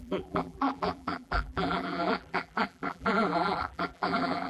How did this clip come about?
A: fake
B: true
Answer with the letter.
A